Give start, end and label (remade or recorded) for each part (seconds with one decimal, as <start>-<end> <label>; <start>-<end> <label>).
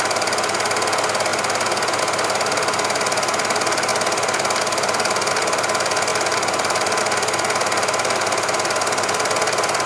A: 0.0-9.9 recorded